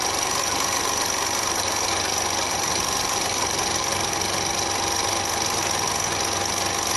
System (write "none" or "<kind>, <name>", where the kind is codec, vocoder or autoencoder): none